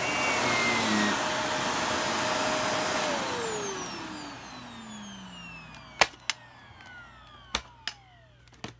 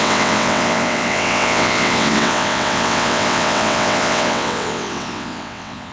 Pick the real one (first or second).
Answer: first